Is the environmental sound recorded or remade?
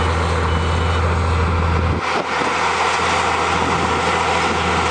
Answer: recorded